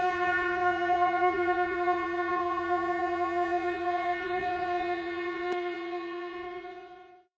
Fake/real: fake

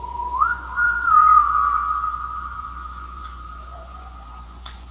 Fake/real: fake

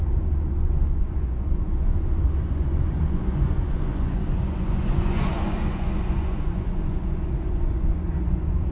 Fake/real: fake